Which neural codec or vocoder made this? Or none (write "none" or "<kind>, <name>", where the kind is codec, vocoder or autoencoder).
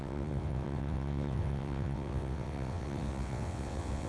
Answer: vocoder, WaveNeXt